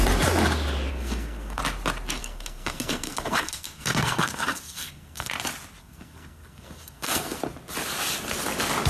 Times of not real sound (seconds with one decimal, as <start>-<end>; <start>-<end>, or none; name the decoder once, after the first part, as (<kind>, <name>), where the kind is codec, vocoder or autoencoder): 0.9-1.6 (codec, SNAC); 2.2-5.3; 5.8-7.4

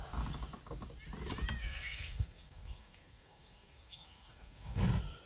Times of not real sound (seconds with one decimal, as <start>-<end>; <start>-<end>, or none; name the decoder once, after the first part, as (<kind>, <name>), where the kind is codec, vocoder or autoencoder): 1.6-4.8 (codec, SNAC)

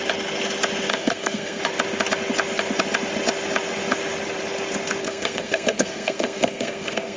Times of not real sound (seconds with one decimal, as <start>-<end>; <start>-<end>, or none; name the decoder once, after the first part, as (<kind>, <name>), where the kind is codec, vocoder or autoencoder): 0.9-1.6 (codec, SNAC); 5.0-7.2

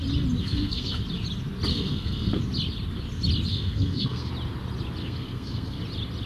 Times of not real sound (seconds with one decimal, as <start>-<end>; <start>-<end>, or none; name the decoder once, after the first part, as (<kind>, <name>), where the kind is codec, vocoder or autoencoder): 0.4-1.0 (codec, SNAC); 1.7-2.4; 3.5-4.3; 5.0-5.8